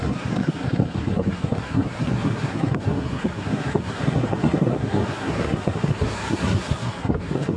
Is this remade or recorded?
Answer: remade